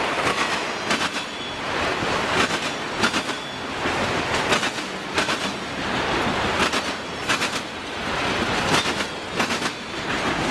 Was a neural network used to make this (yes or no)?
no